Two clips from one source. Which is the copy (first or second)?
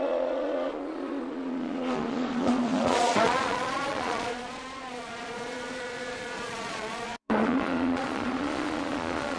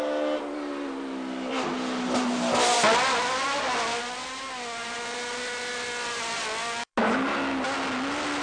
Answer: first